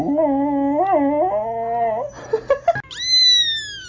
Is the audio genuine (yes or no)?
yes